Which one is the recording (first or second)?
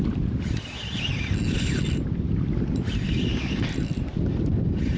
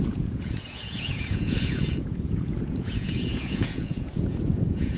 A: first